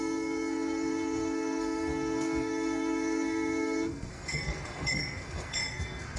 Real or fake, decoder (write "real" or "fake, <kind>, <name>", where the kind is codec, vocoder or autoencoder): fake, codec, SNAC